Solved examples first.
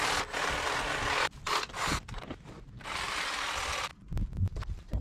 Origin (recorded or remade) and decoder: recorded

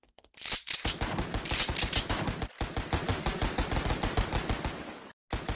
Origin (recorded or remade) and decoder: recorded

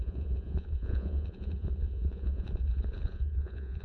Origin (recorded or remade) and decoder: remade, vocoder, Vocos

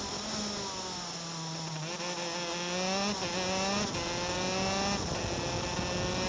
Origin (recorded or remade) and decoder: recorded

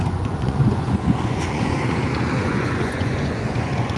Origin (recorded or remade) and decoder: remade, vocoder, Vocos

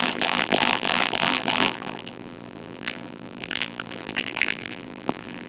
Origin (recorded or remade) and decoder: remade, vocoder, BigVGAN v2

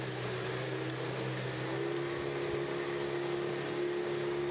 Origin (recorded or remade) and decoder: recorded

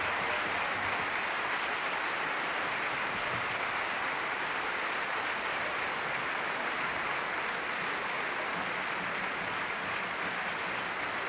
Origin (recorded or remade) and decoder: recorded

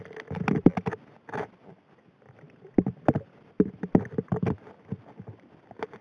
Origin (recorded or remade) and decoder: recorded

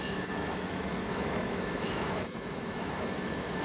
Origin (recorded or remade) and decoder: remade, autoencoder, DAC-VAE